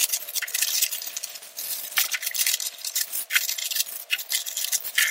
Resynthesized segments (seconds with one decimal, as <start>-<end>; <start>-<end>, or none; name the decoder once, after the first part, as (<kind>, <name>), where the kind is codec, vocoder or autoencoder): 0.0-3.6 (vocoder, BigVGAN v2)